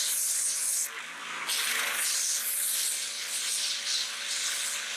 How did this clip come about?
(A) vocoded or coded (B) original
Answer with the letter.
B